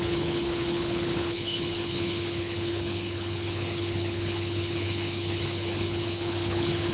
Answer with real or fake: fake